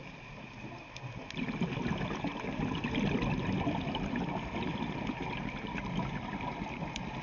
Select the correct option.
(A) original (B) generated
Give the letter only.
A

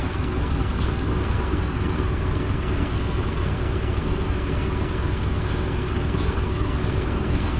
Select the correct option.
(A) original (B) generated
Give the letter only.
B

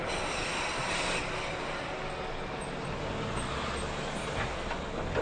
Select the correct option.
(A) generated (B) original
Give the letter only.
B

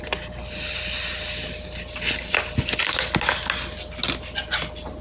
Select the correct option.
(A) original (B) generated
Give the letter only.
A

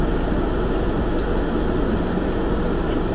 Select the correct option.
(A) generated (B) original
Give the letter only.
B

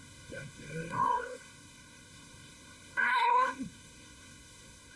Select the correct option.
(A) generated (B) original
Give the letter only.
A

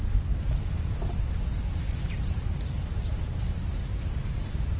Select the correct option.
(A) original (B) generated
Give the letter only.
A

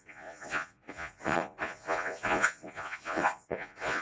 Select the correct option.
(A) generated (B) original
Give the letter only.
A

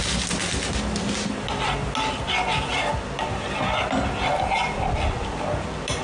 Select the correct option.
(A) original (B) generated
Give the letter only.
A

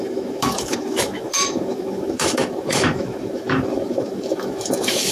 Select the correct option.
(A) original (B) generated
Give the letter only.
B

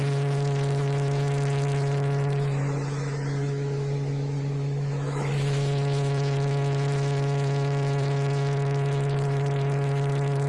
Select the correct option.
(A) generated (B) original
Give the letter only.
A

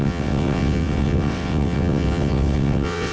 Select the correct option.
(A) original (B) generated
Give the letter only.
B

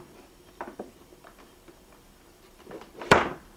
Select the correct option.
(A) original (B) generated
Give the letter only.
B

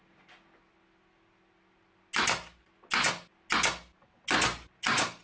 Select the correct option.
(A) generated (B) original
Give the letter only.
B